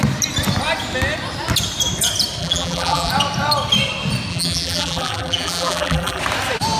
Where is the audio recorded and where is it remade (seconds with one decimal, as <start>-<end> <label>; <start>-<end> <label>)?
0.0-2.4 recorded; 2.4-3.1 remade; 3.1-4.3 recorded; 4.3-6.2 remade; 6.2-6.8 recorded